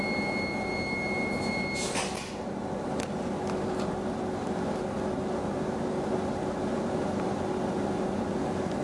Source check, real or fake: real